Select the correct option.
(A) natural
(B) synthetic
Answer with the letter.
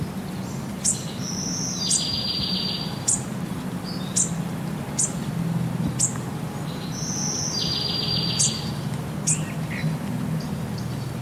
A